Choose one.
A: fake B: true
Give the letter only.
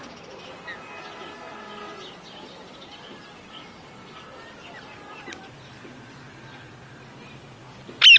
B